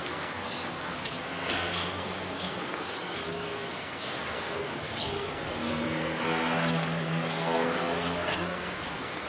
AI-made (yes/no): yes